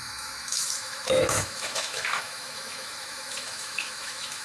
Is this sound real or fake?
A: fake